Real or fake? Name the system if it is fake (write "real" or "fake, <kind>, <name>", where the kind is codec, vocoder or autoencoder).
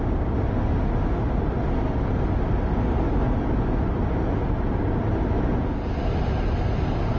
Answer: real